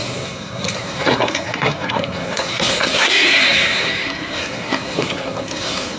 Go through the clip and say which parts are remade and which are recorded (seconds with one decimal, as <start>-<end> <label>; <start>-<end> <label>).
0.0-6.0 remade

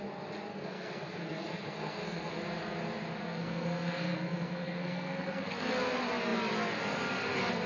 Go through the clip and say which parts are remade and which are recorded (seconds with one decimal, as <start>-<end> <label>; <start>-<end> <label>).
0.0-0.5 recorded; 0.5-2.4 remade; 2.4-3.2 recorded; 3.2-5.7 remade; 5.7-7.7 recorded